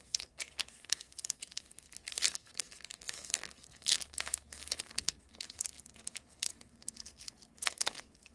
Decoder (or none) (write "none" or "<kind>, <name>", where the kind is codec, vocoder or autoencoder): codec, SNAC